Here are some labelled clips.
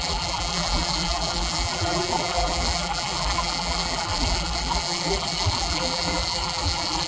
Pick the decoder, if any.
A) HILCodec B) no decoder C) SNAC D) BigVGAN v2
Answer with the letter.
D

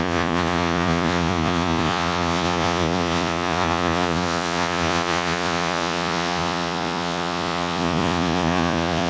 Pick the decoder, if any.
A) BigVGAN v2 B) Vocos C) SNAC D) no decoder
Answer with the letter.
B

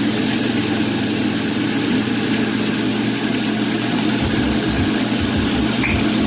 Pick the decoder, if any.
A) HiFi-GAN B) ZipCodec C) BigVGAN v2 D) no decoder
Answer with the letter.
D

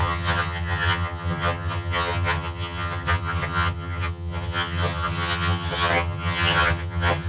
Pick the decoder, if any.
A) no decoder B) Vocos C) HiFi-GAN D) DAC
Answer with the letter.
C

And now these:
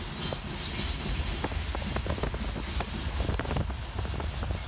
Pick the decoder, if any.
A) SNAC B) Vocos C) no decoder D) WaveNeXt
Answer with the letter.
C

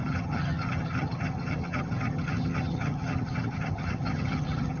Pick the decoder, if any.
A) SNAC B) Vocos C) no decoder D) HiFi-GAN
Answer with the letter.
D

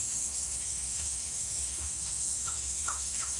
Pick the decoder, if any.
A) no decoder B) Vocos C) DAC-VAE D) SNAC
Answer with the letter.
C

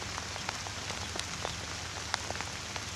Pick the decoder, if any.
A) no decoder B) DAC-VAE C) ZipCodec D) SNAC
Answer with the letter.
A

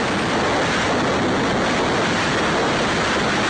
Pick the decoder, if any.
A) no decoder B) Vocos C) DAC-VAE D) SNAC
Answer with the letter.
A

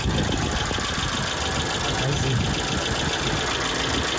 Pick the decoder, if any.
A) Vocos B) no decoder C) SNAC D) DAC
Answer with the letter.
B